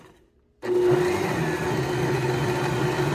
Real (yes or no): yes